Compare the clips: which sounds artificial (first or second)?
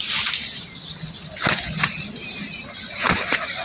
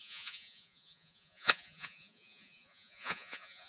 second